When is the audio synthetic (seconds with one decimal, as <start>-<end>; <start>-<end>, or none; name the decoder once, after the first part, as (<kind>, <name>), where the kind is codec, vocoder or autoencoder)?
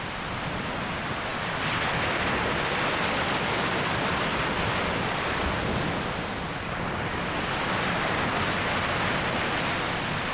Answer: none